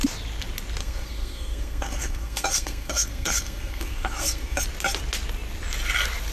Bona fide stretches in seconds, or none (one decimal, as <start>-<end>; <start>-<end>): 0.0-0.8; 4.6-6.3